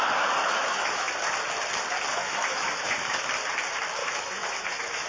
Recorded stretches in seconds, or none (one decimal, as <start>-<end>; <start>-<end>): 0.0-0.4; 1.1-2.1; 3.2-4.0